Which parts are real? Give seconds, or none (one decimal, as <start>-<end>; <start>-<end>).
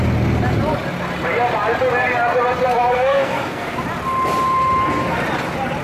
0.0-2.7; 3.8-5.8